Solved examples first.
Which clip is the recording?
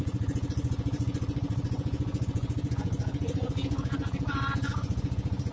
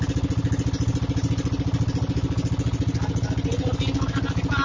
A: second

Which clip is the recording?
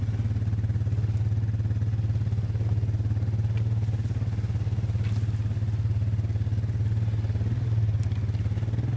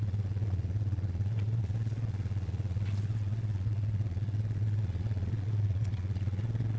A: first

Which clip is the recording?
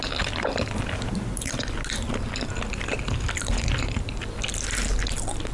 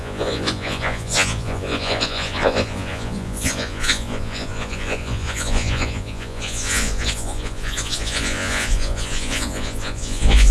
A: first